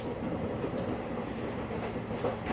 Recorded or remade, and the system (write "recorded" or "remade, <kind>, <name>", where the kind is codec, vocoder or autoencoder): remade, vocoder, BigVGAN v2